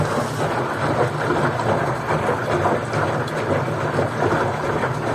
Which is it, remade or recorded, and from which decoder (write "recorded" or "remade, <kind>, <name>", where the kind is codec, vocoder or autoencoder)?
recorded